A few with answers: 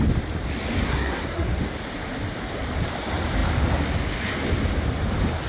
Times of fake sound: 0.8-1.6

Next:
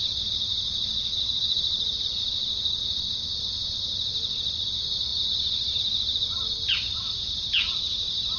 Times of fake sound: none

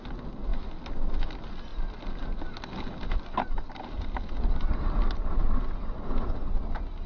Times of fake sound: none

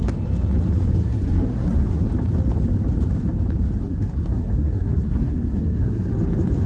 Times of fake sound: 1.0-2.1; 3.8-6.1

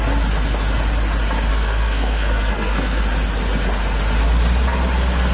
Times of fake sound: 1.5-3.0

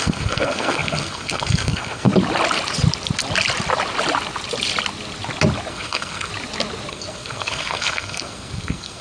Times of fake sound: 0.0-2.1; 5.7-6.3; 6.9-9.0

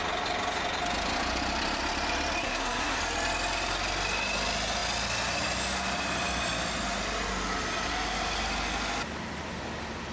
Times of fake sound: 2.4-3.0

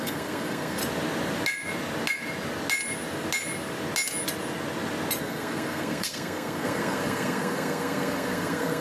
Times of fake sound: 0.0-0.8; 5.2-8.8